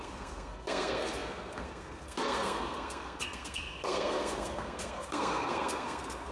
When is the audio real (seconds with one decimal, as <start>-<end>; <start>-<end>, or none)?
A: none